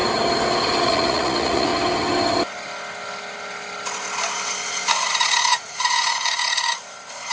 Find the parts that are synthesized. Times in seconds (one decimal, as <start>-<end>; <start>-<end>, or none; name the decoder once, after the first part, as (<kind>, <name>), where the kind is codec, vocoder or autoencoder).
0.8-1.7 (vocoder, Vocos); 5.1-6.7